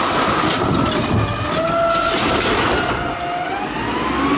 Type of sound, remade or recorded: recorded